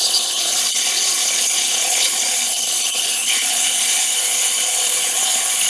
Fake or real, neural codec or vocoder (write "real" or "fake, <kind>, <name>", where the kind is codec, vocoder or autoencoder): fake, codec, HILCodec